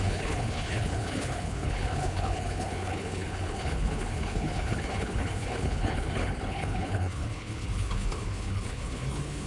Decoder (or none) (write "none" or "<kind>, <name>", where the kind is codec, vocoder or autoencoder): codec, HILCodec